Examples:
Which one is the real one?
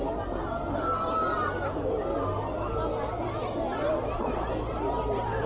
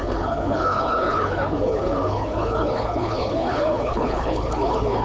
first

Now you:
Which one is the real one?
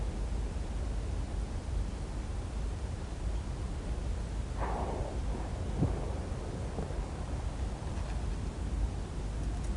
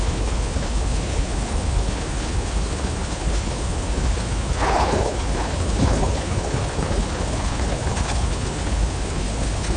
first